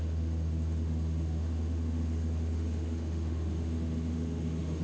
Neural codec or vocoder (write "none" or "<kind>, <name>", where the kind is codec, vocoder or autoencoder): autoencoder, DAC-VAE